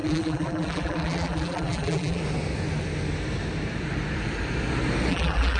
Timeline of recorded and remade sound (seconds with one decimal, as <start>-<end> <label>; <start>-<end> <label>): 0.0-2.2 remade; 2.2-5.1 recorded; 5.1-5.6 remade